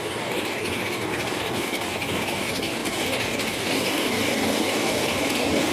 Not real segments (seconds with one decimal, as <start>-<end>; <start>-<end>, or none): 0.0-5.7